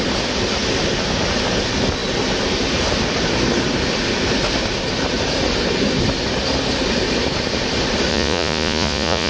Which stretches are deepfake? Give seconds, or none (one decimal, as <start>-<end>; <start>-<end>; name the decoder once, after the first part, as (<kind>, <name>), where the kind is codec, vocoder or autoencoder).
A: 8.1-9.3 (vocoder, Vocos)